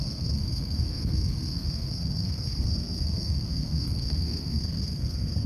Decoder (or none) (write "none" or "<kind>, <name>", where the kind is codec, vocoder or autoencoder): codec, SNAC